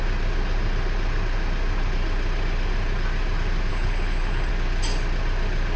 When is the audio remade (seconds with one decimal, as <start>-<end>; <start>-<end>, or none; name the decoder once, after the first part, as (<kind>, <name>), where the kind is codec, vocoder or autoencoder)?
3.7-4.5 (codec, HILCodec)